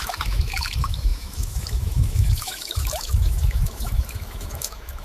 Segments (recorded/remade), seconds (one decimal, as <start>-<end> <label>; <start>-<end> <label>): 0.0-5.0 remade